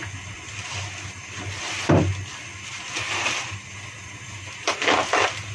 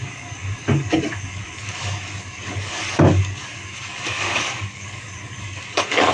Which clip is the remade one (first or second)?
second